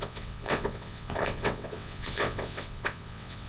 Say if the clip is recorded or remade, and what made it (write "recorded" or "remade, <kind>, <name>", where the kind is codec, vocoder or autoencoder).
remade, vocoder, WaveNeXt